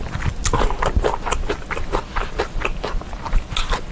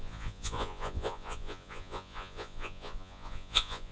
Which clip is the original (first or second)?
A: first